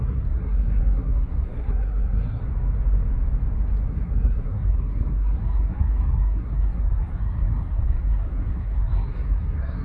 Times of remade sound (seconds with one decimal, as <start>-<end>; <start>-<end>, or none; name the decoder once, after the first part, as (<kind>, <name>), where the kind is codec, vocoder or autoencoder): 0.0-2.4 (codec, SNAC); 3.9-9.8